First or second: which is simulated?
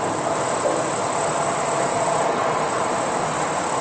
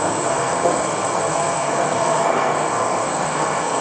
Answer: second